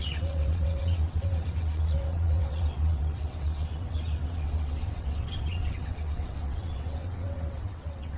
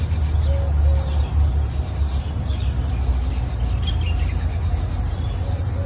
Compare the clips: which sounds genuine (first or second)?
second